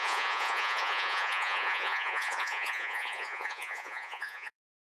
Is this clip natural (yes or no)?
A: no